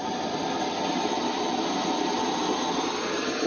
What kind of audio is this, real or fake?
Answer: real